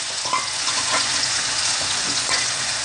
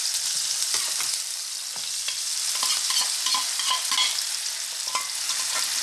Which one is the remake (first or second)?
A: first